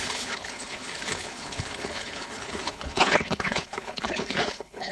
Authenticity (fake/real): fake